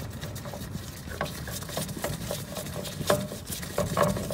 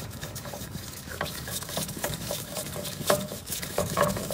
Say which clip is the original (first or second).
first